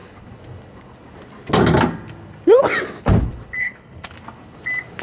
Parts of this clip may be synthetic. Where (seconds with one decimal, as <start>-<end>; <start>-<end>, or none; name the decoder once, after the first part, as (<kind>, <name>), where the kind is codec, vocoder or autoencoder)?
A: 3.6-4.1 (codec, HILCodec)